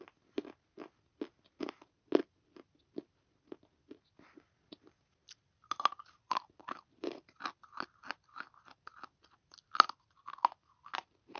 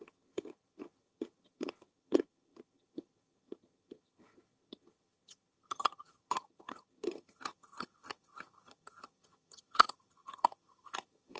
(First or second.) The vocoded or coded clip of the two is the second